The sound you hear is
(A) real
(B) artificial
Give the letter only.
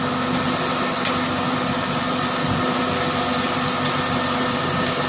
A